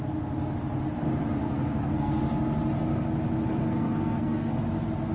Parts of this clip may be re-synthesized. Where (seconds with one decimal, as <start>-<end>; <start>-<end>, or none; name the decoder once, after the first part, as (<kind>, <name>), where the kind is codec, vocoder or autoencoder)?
1.4-2.2 (codec, SNAC); 3.6-4.6